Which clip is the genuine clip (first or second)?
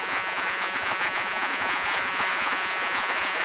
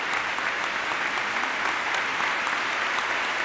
second